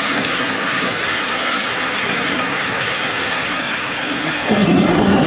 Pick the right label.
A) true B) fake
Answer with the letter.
B